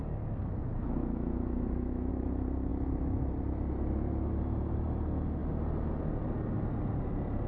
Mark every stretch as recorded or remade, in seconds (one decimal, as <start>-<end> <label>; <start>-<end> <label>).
0.0-0.7 recorded; 0.7-2.1 remade; 2.1-7.5 recorded

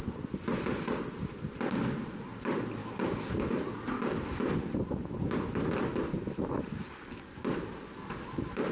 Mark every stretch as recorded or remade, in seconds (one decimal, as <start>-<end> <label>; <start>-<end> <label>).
0.0-2.8 recorded; 2.8-3.6 remade; 3.6-8.7 recorded

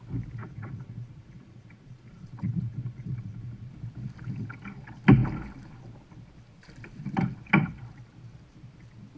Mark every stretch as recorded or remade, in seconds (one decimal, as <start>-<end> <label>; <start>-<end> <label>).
0.0-0.4 recorded; 0.4-3.7 remade; 3.7-9.2 recorded

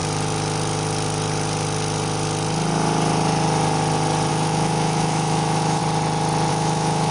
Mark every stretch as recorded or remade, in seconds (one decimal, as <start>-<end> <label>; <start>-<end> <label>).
0.0-4.3 recorded; 4.3-5.8 remade; 5.8-6.5 recorded; 6.5-7.1 remade

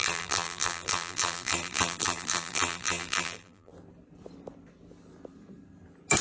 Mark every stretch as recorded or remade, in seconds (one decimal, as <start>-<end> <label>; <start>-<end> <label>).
0.0-3.7 remade; 3.7-6.2 recorded

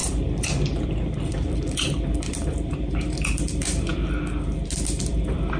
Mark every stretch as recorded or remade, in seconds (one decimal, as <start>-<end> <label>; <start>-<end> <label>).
0.0-3.9 remade; 3.9-5.1 recorded; 5.1-5.6 remade

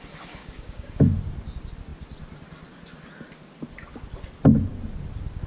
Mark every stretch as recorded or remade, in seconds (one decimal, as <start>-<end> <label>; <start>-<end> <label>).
0.0-0.4 recorded; 0.4-0.9 remade; 0.9-5.5 recorded

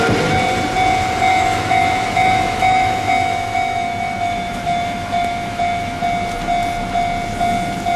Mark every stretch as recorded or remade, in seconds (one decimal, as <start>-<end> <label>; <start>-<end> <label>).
0.0-1.3 recorded; 1.3-6.0 remade; 6.0-8.0 recorded